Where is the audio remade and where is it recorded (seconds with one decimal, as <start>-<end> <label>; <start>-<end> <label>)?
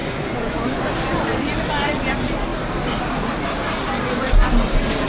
0.0-0.8 remade; 0.8-5.1 recorded